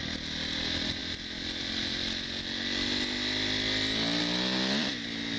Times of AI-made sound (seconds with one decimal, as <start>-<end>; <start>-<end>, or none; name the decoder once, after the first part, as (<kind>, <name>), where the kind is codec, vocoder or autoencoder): none